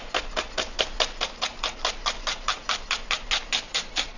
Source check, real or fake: real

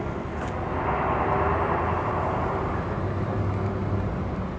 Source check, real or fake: real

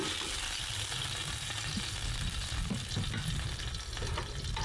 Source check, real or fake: real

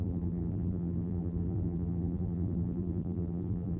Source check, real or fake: fake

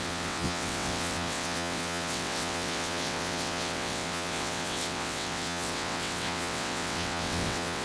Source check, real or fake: fake